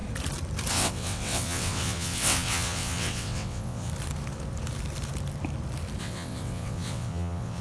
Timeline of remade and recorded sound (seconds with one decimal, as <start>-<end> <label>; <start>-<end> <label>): 0.0-0.7 recorded; 0.7-3.9 remade; 3.9-6.0 recorded; 6.0-7.6 remade